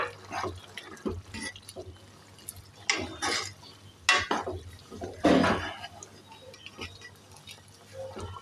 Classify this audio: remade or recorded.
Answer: recorded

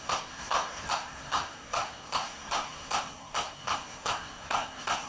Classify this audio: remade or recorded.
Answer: remade